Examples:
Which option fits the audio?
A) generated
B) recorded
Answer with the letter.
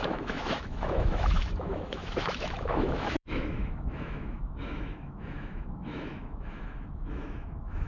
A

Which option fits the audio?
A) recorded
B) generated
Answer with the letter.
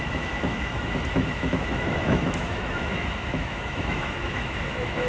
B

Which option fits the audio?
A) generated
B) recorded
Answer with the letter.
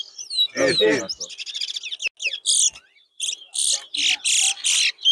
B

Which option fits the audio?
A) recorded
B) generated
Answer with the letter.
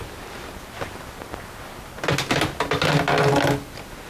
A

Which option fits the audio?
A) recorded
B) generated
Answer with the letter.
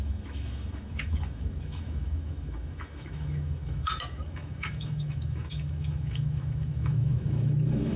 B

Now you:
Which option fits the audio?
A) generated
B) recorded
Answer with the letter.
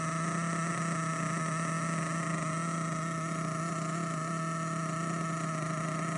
B